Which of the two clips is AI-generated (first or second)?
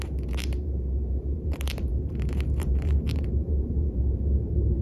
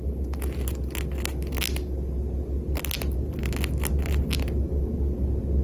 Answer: first